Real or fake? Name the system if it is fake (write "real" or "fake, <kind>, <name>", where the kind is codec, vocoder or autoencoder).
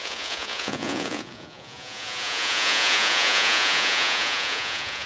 fake, vocoder, Vocos